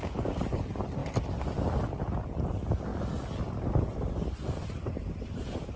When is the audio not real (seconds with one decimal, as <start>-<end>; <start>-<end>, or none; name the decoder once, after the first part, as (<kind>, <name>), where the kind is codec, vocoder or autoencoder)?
0.0-1.0 (vocoder, BigVGAN v2); 2.3-2.9; 3.7-5.8

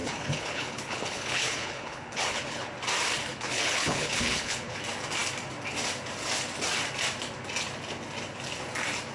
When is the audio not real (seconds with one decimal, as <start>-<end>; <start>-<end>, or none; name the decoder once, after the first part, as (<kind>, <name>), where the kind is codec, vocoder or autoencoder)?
0.0-2.7 (codec, HILCodec); 3.3-4.7

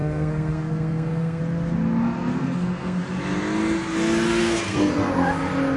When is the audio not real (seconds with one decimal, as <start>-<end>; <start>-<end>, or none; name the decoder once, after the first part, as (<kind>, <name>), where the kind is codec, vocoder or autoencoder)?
0.0-1.4 (codec, SNAC); 2.4-3.0; 4.4-5.1

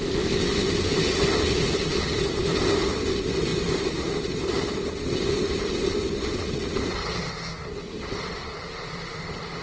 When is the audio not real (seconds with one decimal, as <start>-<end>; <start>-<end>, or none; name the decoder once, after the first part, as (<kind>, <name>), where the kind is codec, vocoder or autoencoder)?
none

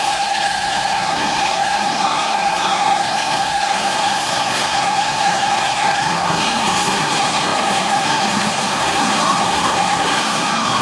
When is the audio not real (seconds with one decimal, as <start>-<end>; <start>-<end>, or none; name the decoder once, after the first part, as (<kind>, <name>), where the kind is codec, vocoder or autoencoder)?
0.0-10.8 (codec, SNAC)

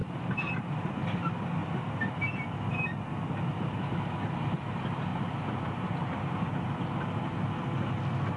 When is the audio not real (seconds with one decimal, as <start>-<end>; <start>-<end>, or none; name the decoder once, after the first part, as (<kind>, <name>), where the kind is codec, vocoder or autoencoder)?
1.6-2.2 (vocoder, BigVGAN v2); 5.1-6.5